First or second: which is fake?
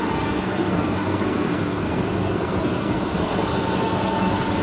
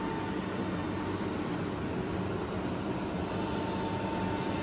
first